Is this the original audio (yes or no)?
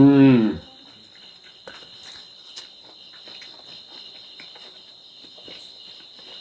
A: yes